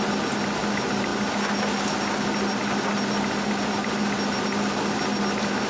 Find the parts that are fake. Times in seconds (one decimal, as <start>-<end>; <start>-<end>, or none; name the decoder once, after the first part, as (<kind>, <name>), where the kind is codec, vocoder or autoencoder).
none